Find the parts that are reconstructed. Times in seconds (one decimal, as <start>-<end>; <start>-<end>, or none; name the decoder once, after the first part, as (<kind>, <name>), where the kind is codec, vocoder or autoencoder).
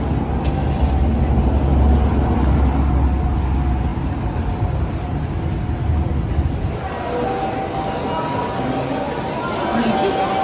none